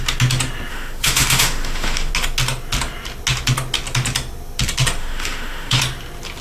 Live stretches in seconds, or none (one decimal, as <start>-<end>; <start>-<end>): 0.0-0.7; 2.1-5.0; 5.8-6.4